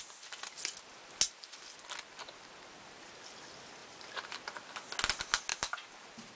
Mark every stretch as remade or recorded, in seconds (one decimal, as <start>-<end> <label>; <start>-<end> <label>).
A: 0.0-3.8 recorded; 3.8-4.3 remade; 4.3-5.5 recorded; 5.5-6.3 remade